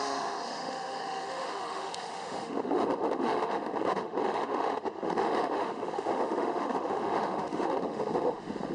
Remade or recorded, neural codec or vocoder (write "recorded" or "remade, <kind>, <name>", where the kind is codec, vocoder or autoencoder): remade, autoencoder, DAC-VAE